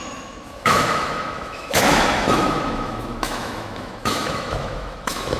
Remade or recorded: remade